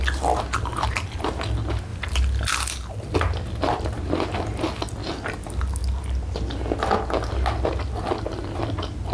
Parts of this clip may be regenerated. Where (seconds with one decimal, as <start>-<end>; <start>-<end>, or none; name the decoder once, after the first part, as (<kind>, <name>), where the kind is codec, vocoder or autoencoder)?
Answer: none